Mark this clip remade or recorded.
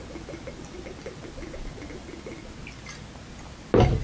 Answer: recorded